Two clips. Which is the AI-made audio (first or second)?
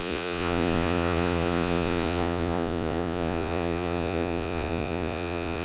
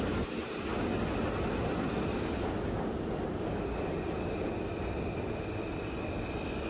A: first